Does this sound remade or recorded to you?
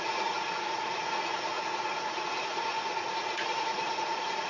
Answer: remade